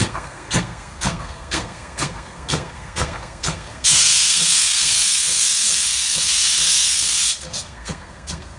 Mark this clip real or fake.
fake